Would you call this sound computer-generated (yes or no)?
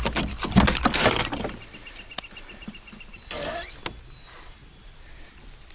no